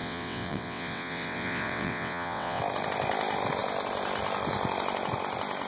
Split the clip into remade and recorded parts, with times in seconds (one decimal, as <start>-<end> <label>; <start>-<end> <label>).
0.0-2.6 remade; 2.6-5.7 recorded